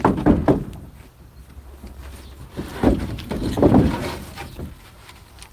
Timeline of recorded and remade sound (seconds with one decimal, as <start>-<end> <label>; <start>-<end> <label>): 0.0-2.7 recorded; 2.7-3.9 remade; 3.9-5.5 recorded

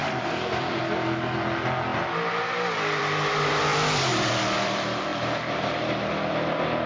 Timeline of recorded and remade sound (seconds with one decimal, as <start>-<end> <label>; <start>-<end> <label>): 0.0-0.8 remade; 0.8-3.7 recorded; 3.7-4.3 remade; 4.3-6.9 recorded